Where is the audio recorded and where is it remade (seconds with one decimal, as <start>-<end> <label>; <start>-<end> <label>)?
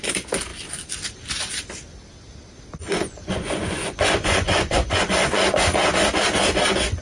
0.0-2.8 recorded; 2.8-5.8 remade; 5.8-7.0 recorded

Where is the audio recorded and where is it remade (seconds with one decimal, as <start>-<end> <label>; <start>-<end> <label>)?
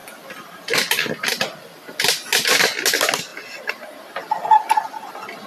0.0-5.5 recorded